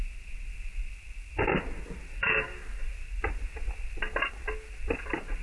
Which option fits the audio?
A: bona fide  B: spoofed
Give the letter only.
A